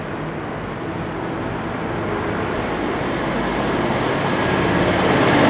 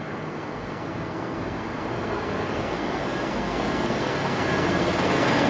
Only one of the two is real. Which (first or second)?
first